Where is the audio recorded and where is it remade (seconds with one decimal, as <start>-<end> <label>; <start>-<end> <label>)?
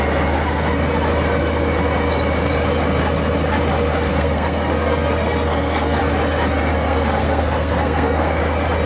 0.0-4.1 recorded; 4.1-6.0 remade; 6.0-6.7 recorded; 6.7-8.4 remade; 8.4-8.9 recorded